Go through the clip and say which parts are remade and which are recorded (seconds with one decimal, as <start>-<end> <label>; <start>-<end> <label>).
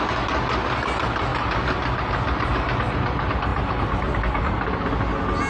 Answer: 0.0-3.5 recorded; 3.5-4.8 remade; 4.8-5.5 recorded